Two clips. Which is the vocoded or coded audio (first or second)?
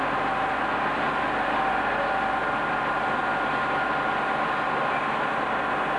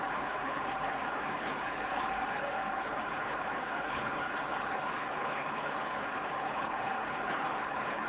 second